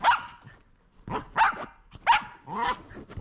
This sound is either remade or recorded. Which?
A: recorded